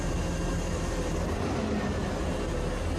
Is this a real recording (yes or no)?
yes